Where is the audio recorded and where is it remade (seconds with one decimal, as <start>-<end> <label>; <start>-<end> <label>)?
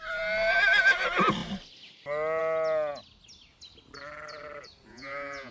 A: 0.0-4.9 recorded; 4.9-5.5 remade